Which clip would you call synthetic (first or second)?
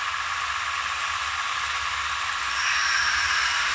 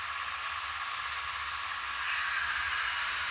first